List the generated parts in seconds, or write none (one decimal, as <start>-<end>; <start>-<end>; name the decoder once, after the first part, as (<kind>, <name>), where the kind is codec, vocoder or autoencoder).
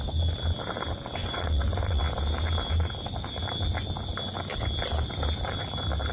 1.2-2.0 (vocoder, Vocos)